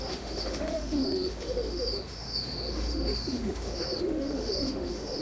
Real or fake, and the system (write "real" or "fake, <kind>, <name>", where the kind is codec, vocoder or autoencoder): fake, autoencoder, DAC-VAE